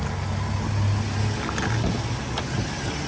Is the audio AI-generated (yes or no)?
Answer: no